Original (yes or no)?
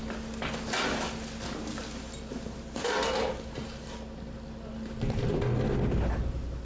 yes